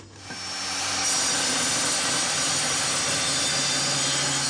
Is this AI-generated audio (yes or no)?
no